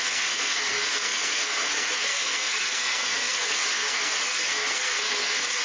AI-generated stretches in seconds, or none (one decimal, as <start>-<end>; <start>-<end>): 0.0-5.6